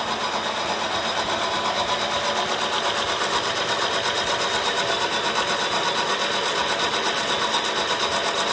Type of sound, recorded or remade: recorded